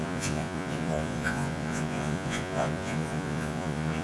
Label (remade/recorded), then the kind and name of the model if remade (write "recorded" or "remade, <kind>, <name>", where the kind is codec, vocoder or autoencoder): remade, vocoder, Vocos